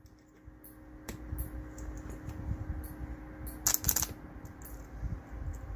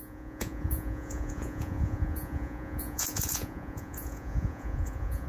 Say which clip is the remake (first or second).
second